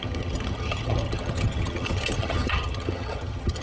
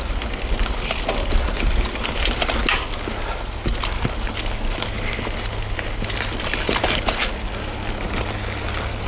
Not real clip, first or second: first